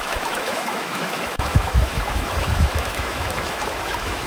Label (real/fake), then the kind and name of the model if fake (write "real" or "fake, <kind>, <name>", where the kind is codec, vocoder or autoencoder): fake, autoencoder, DAC-VAE